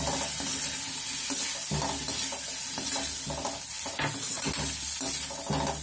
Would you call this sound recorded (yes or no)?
yes